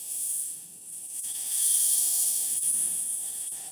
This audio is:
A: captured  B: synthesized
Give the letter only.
B